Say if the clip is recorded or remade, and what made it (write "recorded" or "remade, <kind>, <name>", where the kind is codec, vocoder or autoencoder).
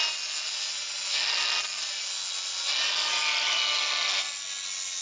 recorded